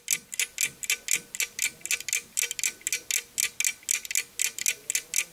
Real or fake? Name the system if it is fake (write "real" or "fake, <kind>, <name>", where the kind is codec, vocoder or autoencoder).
real